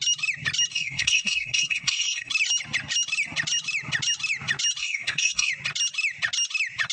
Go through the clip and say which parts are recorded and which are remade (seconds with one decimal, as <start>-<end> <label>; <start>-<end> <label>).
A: 0.0-0.7 recorded; 0.7-2.3 remade; 2.3-4.8 recorded; 4.8-5.5 remade; 5.5-6.9 recorded